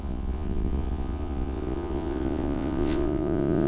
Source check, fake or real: fake